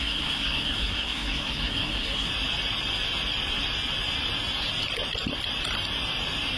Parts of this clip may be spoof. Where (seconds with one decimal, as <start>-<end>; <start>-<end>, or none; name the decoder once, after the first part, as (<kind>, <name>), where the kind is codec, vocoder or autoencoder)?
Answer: 0.0-2.3 (codec, SNAC)